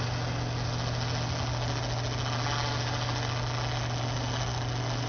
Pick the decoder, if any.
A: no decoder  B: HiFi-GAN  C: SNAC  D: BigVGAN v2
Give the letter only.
A